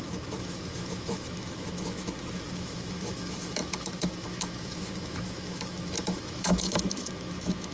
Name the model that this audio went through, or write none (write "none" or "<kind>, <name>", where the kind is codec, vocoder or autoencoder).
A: autoencoder, DAC-VAE